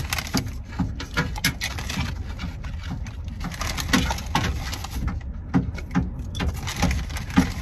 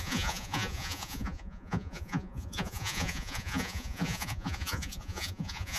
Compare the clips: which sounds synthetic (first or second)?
second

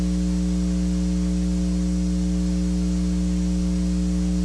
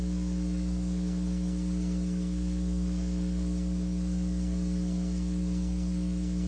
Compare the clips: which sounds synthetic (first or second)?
second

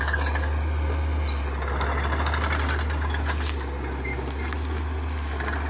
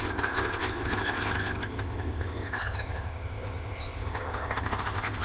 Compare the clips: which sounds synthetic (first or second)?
second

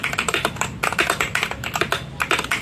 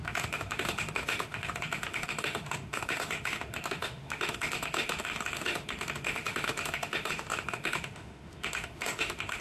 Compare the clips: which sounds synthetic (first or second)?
second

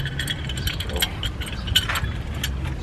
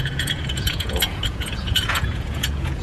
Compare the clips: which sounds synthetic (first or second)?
second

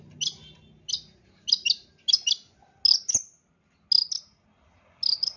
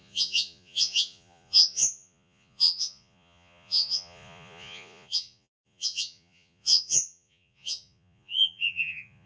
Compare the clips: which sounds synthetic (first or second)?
second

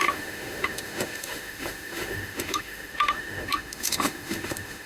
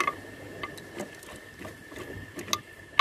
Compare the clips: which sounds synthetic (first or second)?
first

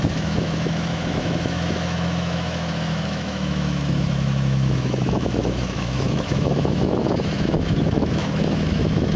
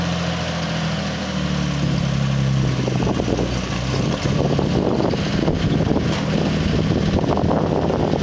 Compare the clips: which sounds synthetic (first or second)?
first